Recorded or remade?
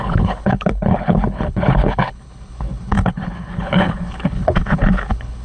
remade